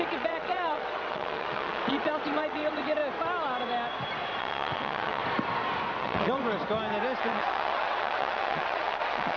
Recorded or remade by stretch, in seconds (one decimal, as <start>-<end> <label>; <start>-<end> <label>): 0.0-3.0 remade; 3.0-4.4 recorded; 4.4-5.2 remade; 5.2-6.0 recorded; 6.0-6.4 remade; 6.4-7.2 recorded; 7.2-9.4 remade